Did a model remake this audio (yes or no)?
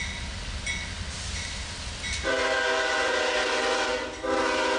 no